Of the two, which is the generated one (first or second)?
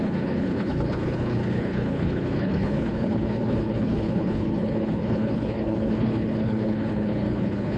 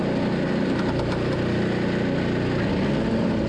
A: first